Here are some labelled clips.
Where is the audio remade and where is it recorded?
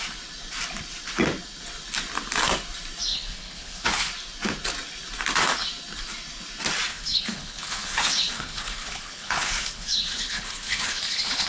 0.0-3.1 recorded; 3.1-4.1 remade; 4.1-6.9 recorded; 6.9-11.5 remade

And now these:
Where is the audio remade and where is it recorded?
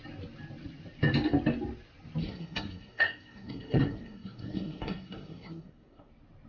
0.0-2.2 recorded; 2.2-6.1 remade; 6.1-6.5 recorded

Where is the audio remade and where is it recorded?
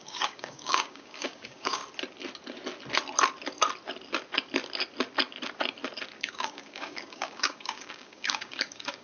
0.0-1.8 remade; 1.8-6.2 recorded; 6.2-9.0 remade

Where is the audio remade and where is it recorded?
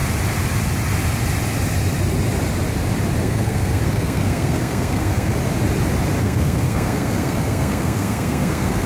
0.0-3.2 recorded; 3.2-5.3 remade; 5.3-6.2 recorded; 6.2-8.9 remade